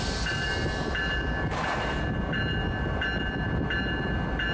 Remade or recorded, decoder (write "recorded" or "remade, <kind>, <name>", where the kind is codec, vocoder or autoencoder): recorded